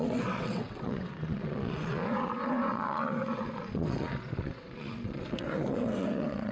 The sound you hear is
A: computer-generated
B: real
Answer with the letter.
A